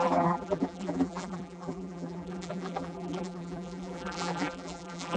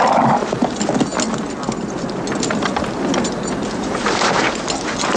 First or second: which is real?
second